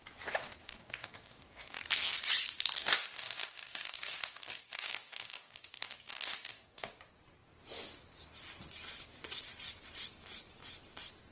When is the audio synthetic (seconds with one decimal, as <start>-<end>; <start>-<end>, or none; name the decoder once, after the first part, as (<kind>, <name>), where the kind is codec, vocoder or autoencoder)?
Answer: 0.6-1.8 (codec, DAC); 2.8-6.9